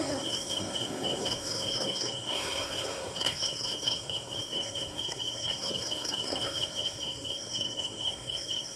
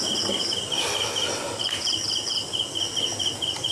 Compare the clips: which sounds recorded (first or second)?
second